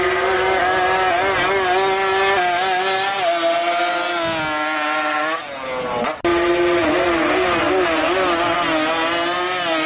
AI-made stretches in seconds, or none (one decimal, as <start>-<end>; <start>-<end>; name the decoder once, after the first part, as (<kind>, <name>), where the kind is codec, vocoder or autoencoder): none